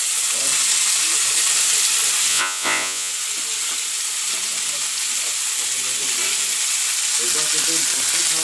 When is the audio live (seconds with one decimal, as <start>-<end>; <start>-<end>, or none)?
0.0-2.3; 3.1-8.4